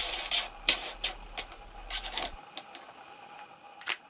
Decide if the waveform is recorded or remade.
recorded